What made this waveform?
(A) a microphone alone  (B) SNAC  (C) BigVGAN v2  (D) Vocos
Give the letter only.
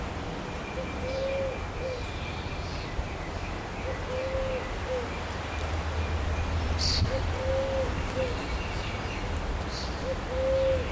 A